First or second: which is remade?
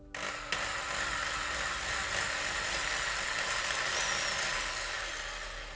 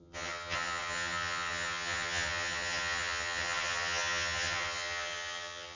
second